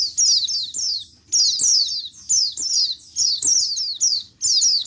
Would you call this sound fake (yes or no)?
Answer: no